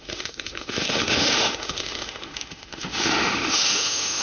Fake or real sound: fake